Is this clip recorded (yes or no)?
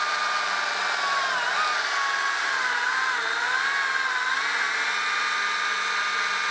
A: yes